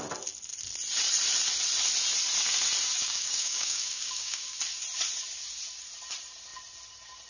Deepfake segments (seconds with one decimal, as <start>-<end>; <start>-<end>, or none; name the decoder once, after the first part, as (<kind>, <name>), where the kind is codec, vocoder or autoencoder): 3.0-4.6 (codec, DAC)